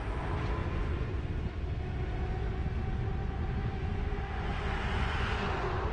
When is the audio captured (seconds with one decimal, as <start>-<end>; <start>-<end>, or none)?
0.0-0.6; 1.3-3.2